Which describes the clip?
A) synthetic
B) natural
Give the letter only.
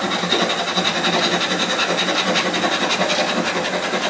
B